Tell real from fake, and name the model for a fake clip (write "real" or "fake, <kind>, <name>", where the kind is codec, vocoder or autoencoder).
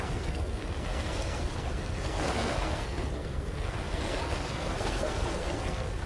fake, codec, SNAC